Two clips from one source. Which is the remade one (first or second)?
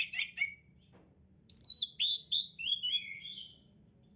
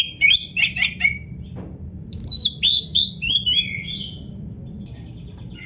second